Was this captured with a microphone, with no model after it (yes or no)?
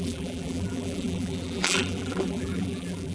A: no